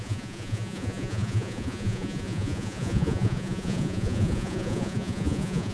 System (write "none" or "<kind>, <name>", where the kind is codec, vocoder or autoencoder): vocoder, Vocos